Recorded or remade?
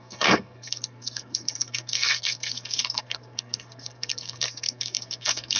remade